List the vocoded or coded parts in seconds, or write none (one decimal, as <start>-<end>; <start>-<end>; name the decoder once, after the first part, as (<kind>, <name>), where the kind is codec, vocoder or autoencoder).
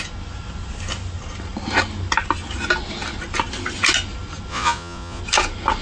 4.5-5.2 (vocoder, Vocos)